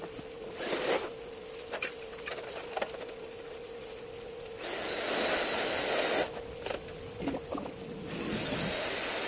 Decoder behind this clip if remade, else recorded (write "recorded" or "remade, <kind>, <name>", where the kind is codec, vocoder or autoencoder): recorded